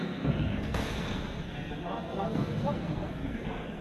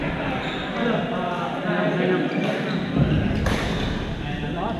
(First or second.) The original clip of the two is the second